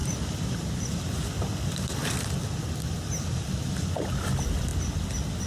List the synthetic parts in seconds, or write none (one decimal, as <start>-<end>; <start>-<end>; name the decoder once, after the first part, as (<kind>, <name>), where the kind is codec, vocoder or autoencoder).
0.0-0.9 (vocoder, BigVGAN v2); 2.0-3.7